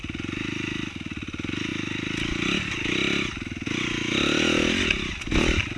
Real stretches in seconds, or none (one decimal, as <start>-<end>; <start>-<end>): 0.0-5.8